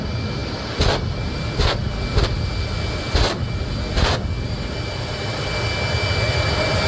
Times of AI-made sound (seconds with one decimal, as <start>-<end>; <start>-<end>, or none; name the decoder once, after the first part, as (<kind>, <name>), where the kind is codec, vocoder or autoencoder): none